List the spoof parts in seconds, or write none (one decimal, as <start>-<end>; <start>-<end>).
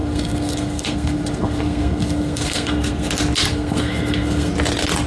0.0-3.1; 3.5-4.5